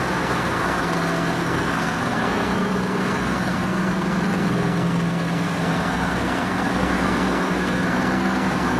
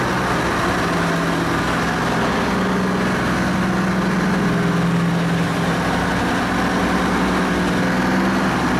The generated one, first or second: first